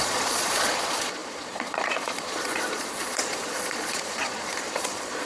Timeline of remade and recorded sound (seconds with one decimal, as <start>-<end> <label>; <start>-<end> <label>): 0.0-5.3 remade